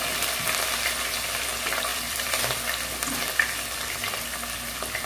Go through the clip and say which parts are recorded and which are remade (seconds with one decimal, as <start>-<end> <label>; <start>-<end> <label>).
0.0-1.9 recorded; 1.9-2.6 remade; 2.6-5.1 recorded

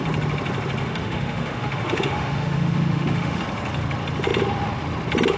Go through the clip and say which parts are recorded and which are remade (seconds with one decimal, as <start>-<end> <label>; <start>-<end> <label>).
0.0-0.8 recorded; 0.8-3.4 remade; 3.4-5.4 recorded